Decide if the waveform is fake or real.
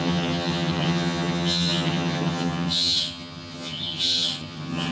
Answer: fake